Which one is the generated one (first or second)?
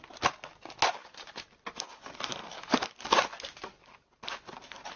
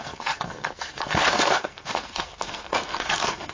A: second